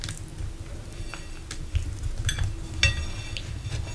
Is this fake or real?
real